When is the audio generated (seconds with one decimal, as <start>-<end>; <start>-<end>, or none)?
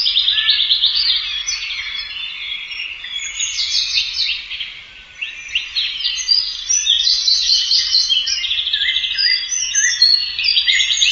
1.4-3.6; 4.4-6.9